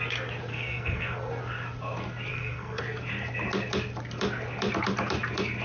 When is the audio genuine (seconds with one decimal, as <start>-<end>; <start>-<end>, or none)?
0.0-0.5; 1.3-2.3; 2.8-5.6